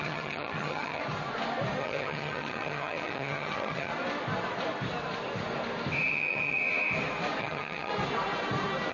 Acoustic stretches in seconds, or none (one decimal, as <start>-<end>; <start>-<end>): 1.0-1.8; 3.9-6.1; 6.6-7.4; 7.9-8.9